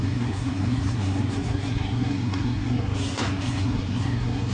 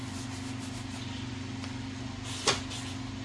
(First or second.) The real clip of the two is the second